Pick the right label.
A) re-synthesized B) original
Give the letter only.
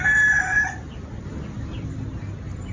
B